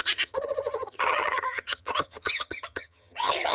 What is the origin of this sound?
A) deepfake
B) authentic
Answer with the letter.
A